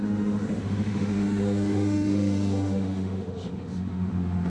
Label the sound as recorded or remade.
remade